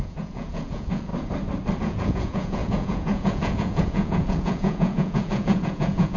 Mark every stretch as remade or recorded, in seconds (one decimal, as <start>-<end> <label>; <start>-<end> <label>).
0.0-1.1 remade; 1.1-1.8 recorded; 1.8-6.2 remade

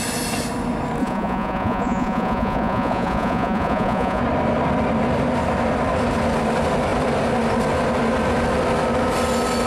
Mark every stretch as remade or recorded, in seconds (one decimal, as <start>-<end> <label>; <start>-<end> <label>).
0.0-1.0 recorded; 1.0-4.2 remade; 4.2-9.7 recorded

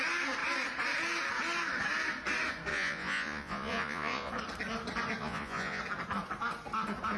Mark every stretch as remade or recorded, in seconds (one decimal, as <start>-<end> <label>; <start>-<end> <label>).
0.0-2.7 recorded; 2.7-4.3 remade; 4.3-5.2 recorded; 5.2-5.8 remade; 5.8-7.2 recorded

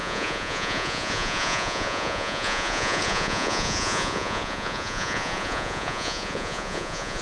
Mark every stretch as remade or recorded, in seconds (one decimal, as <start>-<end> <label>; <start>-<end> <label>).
0.0-7.2 remade

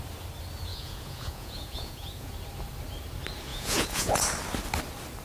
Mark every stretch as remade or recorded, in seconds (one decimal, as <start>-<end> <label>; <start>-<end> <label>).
0.0-0.7 recorded; 0.7-2.3 remade; 2.3-3.5 recorded; 3.5-4.2 remade; 4.2-5.2 recorded